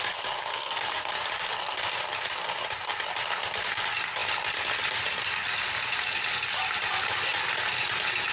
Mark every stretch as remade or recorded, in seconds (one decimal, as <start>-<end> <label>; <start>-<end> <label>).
0.0-0.5 recorded; 0.5-1.1 remade; 1.1-8.3 recorded